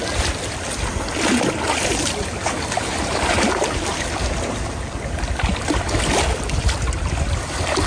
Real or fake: real